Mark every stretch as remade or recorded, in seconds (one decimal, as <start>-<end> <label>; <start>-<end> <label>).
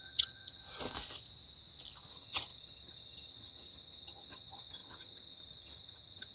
0.0-0.6 remade; 0.6-2.1 recorded; 2.1-6.3 remade